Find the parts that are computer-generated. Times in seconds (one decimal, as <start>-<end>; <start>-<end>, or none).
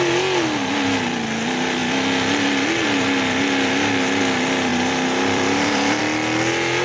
4.7-6.0